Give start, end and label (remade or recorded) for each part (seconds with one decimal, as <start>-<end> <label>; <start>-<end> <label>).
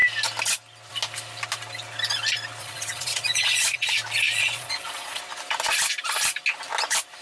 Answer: 0.0-2.6 recorded; 2.6-3.9 remade; 3.9-4.4 recorded; 4.4-5.2 remade; 5.2-7.2 recorded